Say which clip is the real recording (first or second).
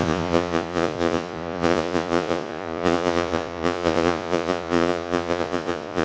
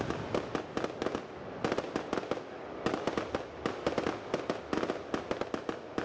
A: second